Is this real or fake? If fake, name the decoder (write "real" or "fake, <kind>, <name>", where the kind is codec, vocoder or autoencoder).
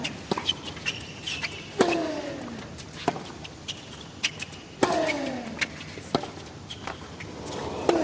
real